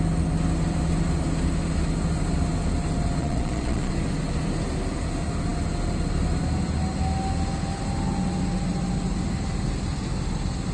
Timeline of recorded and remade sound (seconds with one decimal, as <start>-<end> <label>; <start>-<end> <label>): 0.0-3.2 recorded; 3.2-3.9 remade; 3.9-10.7 recorded